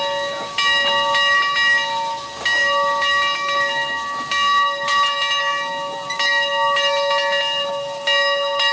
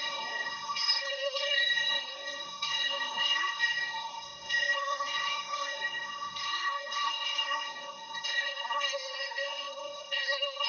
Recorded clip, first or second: first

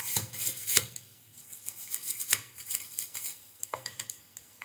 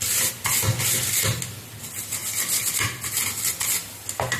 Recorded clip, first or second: second